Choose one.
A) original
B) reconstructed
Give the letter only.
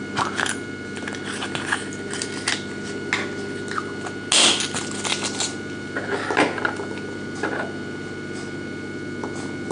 A